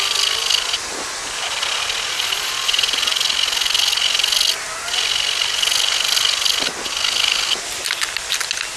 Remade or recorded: recorded